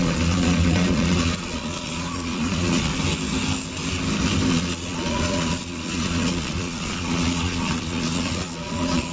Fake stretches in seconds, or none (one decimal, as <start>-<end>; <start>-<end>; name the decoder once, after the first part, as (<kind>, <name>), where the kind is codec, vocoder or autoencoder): 0.0-2.9 (vocoder, Vocos); 4.5-9.1

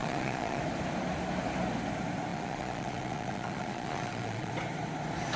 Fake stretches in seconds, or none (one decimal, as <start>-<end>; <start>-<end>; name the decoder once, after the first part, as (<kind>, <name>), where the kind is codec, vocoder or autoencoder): 0.0-0.6 (vocoder, Vocos); 2.3-4.5

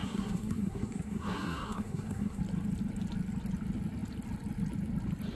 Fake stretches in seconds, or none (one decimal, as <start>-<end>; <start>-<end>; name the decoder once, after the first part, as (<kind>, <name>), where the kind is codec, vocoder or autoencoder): 0.0-2.4 (codec, SNAC)

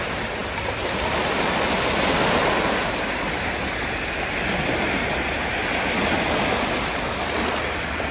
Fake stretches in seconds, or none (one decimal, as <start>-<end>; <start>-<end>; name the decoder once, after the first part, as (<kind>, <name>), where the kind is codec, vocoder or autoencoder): none